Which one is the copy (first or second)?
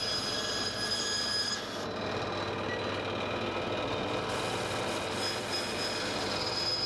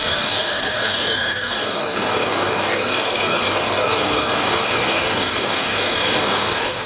second